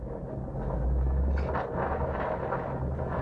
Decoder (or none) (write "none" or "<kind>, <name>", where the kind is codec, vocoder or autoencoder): none